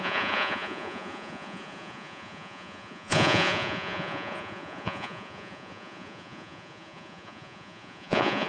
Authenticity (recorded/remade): remade